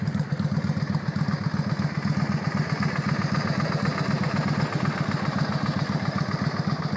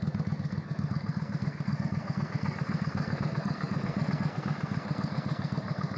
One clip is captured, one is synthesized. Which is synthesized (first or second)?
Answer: second